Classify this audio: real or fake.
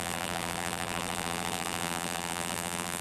fake